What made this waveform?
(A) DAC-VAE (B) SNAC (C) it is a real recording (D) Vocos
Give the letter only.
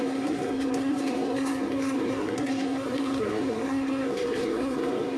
B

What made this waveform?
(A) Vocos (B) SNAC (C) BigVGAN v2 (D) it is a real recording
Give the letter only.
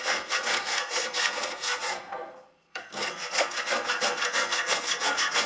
B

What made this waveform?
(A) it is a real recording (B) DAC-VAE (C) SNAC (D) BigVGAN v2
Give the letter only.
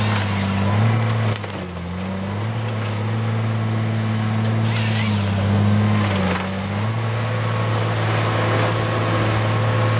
A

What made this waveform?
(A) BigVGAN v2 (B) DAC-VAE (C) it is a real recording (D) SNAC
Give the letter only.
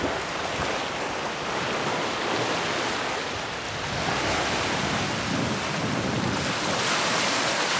C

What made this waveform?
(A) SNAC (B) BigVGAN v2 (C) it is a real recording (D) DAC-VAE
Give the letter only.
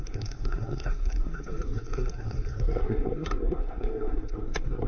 A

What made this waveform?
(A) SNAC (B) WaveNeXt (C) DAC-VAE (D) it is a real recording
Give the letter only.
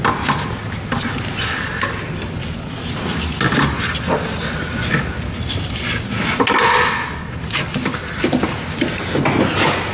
D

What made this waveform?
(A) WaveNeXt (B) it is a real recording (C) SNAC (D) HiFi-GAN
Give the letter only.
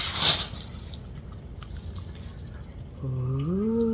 B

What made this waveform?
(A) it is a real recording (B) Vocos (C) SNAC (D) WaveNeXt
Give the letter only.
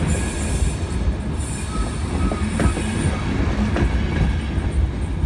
A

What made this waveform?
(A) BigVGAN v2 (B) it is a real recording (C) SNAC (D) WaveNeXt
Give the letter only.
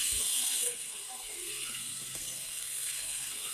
C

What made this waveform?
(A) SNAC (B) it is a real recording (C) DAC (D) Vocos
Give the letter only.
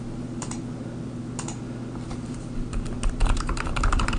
B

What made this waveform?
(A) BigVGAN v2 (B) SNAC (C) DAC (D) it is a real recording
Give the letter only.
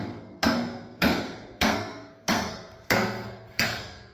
B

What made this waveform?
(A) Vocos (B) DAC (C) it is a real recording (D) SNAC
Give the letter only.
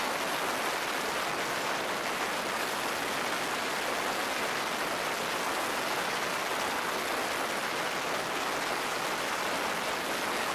C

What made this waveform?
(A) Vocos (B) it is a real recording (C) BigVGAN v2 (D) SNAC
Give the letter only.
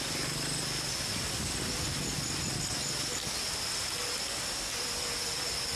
B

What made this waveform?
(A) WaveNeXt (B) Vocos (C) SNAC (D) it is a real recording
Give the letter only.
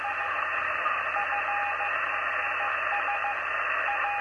D